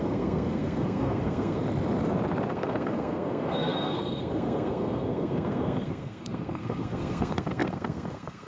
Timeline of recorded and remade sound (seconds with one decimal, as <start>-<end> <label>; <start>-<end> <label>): 0.0-1.6 remade; 1.6-2.5 recorded; 2.5-8.5 remade